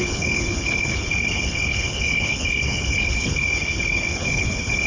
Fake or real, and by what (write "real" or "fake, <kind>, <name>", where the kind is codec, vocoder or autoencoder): fake, codec, HILCodec